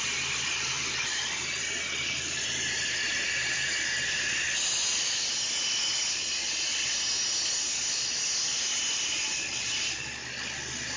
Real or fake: real